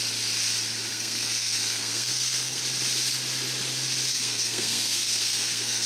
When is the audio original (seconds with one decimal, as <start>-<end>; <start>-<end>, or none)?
0.0-0.9; 2.6-4.1